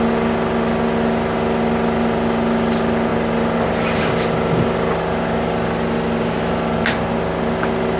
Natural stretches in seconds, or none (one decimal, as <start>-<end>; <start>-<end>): 0.0-8.0